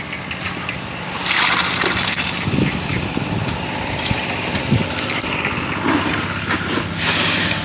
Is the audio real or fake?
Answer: real